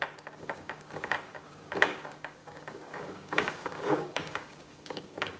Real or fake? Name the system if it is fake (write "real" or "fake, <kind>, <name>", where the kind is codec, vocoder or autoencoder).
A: fake, codec, DAC